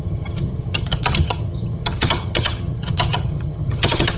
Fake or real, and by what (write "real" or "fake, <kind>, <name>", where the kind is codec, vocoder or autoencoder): fake, vocoder, HiFi-GAN